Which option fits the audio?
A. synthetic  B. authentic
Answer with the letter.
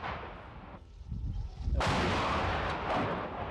B